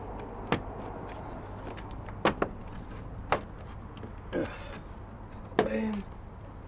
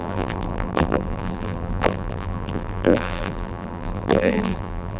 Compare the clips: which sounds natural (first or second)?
first